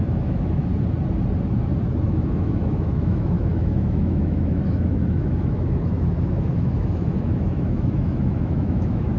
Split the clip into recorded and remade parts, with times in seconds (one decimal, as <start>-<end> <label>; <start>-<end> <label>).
0.0-0.7 remade; 0.7-2.0 recorded; 2.0-9.2 remade